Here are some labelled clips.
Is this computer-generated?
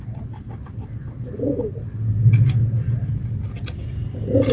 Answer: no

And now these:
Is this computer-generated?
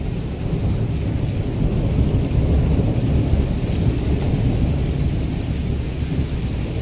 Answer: no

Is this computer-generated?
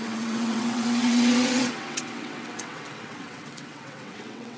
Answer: yes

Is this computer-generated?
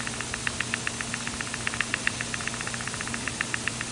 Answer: no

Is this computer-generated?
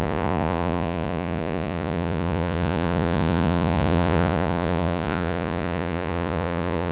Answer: yes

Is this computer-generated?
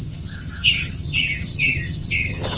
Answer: yes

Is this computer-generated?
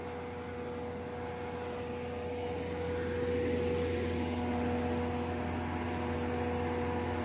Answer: no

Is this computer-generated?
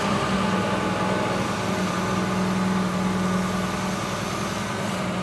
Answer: no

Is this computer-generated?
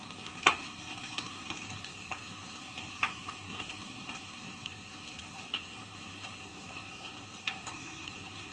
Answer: yes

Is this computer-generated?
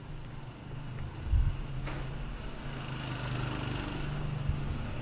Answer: no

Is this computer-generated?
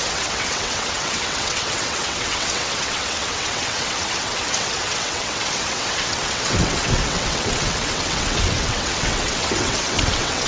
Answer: yes